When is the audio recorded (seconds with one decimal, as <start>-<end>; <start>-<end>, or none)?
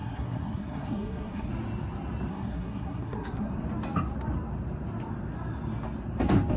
1.5-2.3; 3.5-6.6